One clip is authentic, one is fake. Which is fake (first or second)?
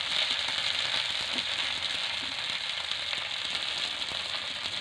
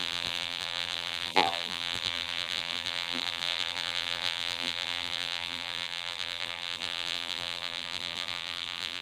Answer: second